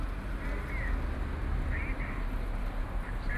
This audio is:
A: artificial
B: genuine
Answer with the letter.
B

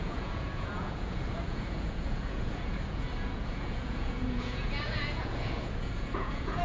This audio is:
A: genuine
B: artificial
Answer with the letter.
B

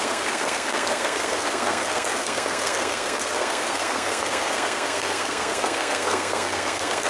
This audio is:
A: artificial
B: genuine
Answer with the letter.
A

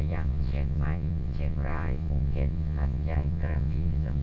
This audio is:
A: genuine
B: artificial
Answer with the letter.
B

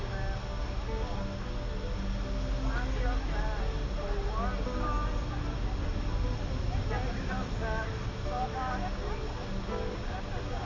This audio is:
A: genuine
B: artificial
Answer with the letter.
A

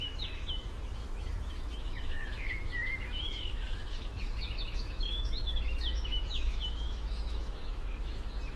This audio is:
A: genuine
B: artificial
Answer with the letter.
B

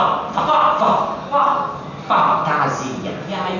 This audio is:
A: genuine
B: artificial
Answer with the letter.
A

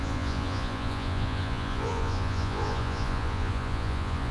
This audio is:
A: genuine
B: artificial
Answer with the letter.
B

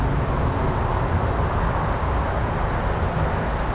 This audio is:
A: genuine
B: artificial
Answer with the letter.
A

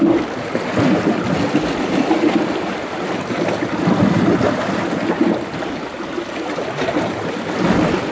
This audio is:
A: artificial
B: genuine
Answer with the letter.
B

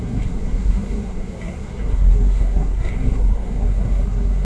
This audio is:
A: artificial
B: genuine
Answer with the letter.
A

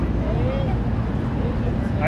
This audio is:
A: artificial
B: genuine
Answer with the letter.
B